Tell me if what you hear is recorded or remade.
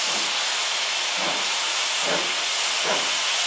remade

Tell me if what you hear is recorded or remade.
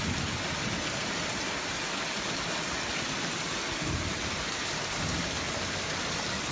recorded